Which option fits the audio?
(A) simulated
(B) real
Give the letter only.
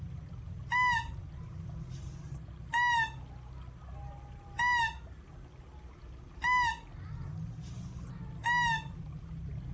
B